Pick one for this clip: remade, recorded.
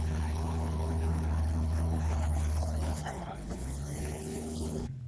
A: remade